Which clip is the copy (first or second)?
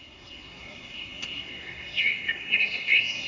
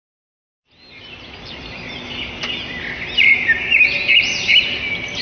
first